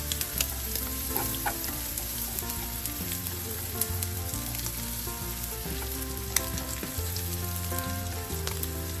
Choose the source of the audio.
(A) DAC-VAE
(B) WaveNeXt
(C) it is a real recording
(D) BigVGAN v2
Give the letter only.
D